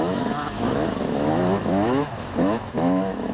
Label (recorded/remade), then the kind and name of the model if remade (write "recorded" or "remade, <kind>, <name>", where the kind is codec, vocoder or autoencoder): remade, autoencoder, DAC-VAE